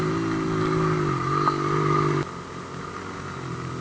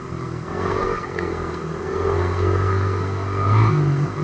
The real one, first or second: first